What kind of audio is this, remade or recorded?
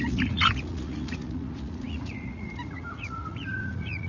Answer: remade